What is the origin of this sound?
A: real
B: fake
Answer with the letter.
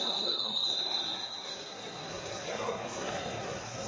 B